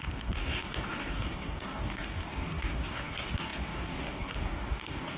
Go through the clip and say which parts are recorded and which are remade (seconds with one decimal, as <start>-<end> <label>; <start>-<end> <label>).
0.0-5.2 remade